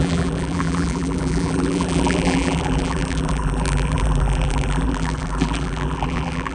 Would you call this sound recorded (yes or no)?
no